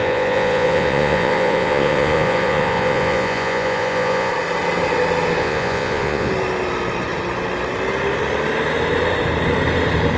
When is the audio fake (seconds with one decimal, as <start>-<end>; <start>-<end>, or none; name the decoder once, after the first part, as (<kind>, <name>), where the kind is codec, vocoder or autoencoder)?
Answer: 0.0-4.3 (vocoder, Vocos); 5.4-6.3

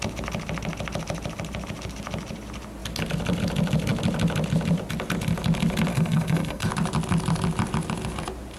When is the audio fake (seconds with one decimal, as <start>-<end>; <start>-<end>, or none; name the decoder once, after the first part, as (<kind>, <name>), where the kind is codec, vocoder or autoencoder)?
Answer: 5.9-6.7 (codec, SNAC)

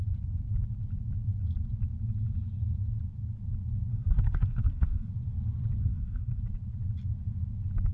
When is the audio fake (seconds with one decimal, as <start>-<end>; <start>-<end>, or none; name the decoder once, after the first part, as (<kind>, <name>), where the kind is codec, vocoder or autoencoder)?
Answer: 3.9-5.1 (codec, SNAC); 5.8-6.4

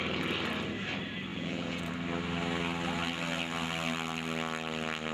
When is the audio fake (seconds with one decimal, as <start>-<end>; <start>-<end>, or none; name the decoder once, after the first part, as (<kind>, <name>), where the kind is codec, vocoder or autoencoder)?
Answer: 1.3-1.9 (vocoder, Vocos)

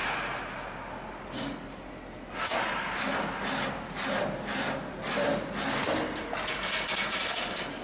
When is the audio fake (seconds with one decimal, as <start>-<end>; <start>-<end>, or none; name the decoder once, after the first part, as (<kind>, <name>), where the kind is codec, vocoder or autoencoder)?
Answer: none

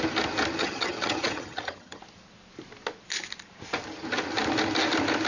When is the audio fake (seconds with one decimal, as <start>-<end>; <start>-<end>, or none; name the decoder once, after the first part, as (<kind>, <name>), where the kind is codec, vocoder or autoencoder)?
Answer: 0.6-2.0 (vocoder, HiFi-GAN)

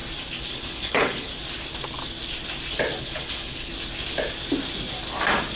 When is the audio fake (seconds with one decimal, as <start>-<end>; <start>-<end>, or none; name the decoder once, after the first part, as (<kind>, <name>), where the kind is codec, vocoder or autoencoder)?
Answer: 0.5-1.3 (codec, HILCodec); 3.0-3.7

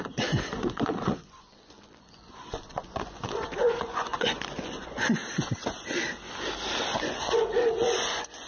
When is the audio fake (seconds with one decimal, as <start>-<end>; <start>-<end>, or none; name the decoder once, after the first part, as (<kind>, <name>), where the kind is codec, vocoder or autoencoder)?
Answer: 0.0-5.2 (vocoder, Vocos); 7.0-8.5